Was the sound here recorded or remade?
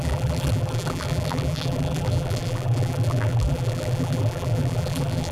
remade